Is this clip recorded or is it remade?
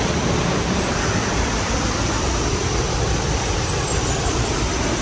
remade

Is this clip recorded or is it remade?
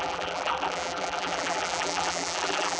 remade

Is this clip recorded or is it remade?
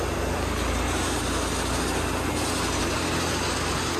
recorded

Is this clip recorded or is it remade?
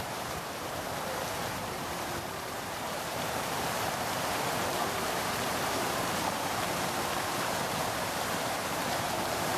remade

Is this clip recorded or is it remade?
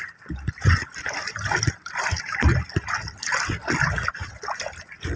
recorded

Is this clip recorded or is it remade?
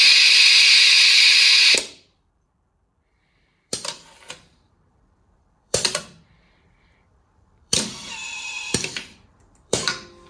remade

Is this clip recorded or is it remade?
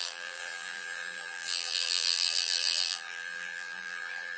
remade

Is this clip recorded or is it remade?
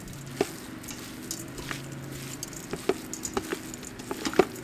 recorded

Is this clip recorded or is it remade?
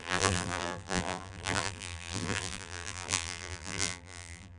remade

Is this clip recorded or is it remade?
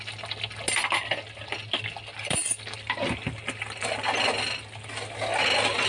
recorded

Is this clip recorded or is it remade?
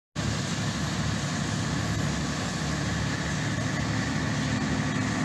recorded